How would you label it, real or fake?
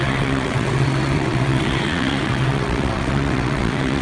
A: fake